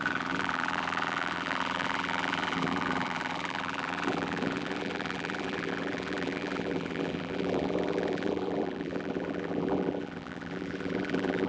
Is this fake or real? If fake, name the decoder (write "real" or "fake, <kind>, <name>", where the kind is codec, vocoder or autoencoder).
fake, vocoder, BigVGAN v2